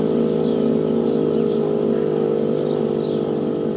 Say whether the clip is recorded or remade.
recorded